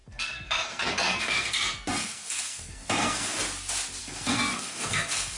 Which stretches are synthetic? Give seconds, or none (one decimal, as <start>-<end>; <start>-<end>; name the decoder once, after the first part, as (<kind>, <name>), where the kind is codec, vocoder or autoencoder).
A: 0.0-3.4 (codec, SNAC); 4.0-5.4